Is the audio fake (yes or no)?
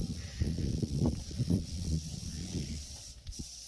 yes